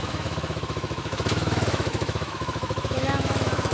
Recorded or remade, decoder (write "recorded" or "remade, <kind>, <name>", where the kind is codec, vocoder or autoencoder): remade, autoencoder, DAC-VAE